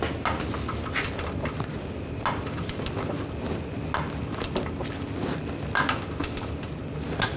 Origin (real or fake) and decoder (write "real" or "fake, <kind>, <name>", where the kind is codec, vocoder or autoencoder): real